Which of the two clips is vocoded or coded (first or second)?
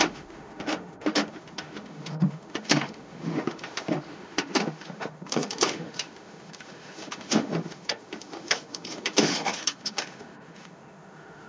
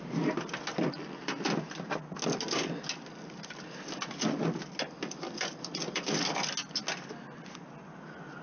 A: first